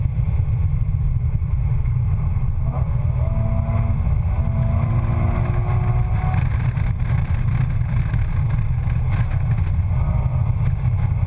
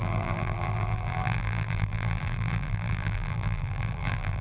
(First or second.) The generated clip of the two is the second